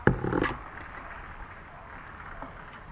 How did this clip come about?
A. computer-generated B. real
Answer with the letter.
B